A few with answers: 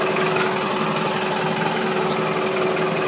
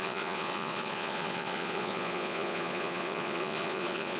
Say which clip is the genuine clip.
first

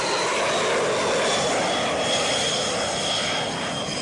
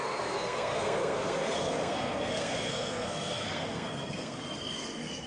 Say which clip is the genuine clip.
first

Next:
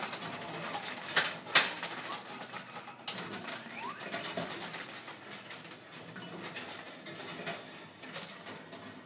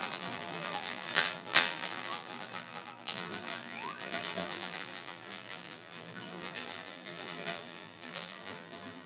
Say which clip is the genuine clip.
first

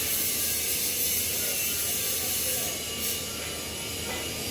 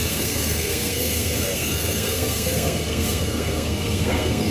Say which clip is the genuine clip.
first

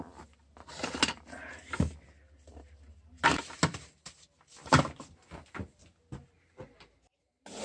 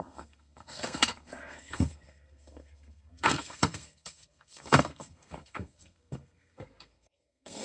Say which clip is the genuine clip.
first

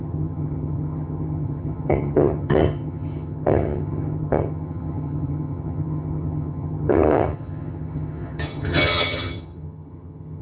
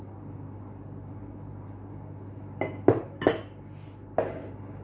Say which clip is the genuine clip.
second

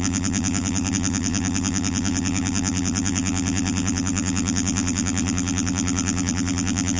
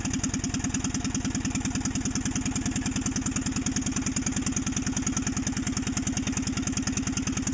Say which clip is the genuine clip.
second